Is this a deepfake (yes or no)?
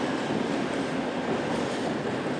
no